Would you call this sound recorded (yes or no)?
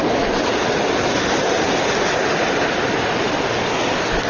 yes